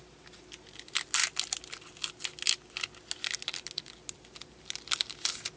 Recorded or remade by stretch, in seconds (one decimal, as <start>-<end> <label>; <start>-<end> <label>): 0.0-5.6 recorded